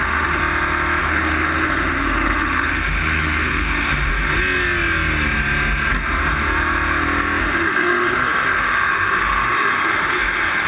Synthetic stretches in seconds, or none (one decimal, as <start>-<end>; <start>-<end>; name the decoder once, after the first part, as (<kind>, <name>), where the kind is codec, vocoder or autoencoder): 0.0-0.4 (autoencoder, DAC-VAE); 1.0-4.1; 7.4-10.7